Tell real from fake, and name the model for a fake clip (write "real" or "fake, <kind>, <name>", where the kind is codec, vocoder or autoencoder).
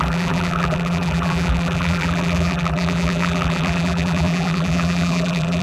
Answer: fake, vocoder, BigVGAN v2